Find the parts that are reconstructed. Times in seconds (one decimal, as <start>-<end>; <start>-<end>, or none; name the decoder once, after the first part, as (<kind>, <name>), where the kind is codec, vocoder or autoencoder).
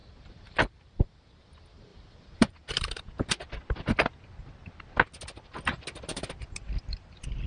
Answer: 0.0-1.4 (vocoder, BigVGAN v2); 1.9-3.3; 6.1-7.5